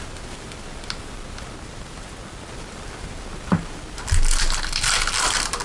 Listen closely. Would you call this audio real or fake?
real